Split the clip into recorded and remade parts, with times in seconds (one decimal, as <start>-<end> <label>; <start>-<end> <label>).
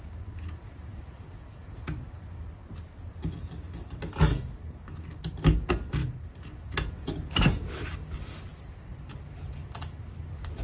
0.0-10.6 recorded